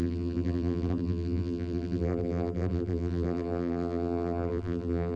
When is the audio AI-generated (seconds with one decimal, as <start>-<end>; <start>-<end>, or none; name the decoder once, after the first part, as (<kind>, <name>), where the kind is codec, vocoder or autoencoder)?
0.0-5.2 (vocoder, BigVGAN v2)